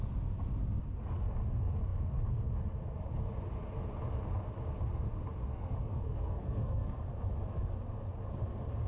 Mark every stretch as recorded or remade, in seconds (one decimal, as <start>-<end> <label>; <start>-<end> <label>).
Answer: 0.0-5.5 recorded; 5.5-7.0 remade; 7.0-8.9 recorded